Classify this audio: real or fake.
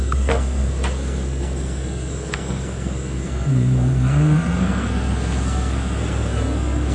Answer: fake